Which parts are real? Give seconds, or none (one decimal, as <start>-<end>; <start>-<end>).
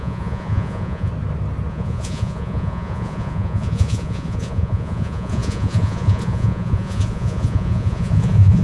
1.1-1.7